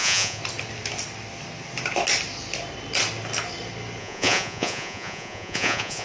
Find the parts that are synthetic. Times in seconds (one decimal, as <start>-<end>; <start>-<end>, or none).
0.0-0.4; 4.0-6.0